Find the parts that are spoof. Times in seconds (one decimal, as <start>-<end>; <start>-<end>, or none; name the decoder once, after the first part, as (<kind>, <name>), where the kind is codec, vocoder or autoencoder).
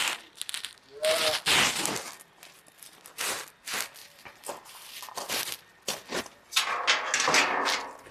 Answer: 4.0-5.7 (vocoder, BigVGAN v2)